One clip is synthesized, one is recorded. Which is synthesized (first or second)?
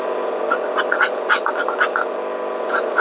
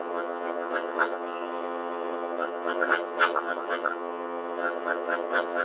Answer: second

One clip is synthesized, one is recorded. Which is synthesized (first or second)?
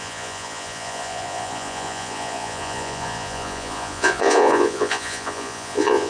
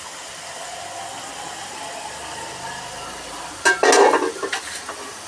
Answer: first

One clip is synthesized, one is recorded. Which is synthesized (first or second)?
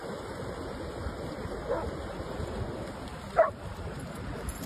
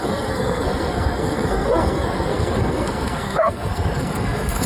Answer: second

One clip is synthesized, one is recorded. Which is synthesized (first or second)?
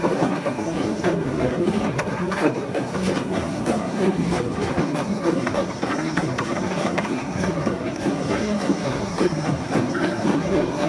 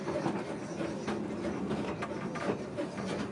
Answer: first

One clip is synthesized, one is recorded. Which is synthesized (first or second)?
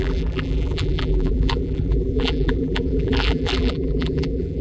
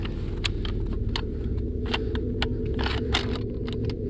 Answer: first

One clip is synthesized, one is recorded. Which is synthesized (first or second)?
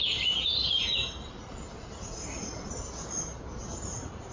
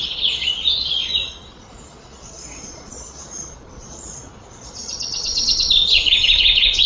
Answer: second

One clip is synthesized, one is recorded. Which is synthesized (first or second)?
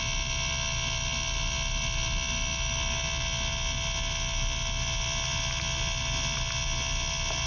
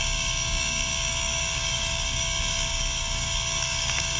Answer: second